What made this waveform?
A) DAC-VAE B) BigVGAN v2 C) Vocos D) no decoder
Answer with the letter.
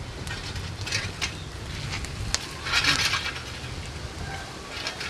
D